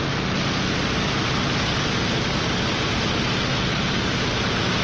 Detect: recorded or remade recorded